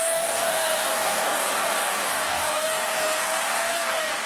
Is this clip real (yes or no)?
no